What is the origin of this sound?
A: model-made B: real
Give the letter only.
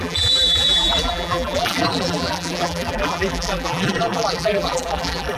A